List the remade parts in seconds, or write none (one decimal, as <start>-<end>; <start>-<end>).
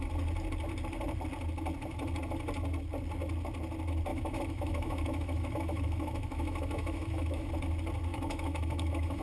4.1-7.5; 8.1-9.2